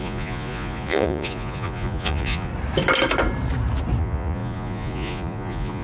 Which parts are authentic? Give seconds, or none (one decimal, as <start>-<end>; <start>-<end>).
2.5-4.0